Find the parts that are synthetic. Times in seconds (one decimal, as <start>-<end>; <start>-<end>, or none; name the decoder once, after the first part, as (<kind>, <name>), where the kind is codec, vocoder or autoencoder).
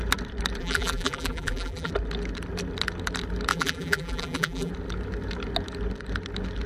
0.6-1.9 (vocoder, BigVGAN v2); 3.5-4.7